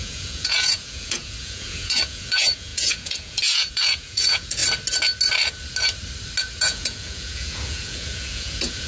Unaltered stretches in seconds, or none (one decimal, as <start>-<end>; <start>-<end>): 4.6-6.4